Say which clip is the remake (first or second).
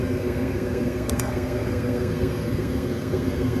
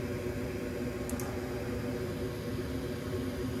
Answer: first